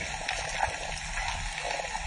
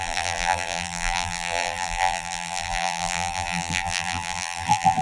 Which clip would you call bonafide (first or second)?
first